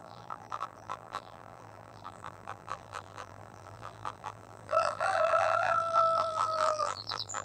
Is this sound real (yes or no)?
no